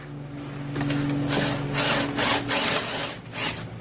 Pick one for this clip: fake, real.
real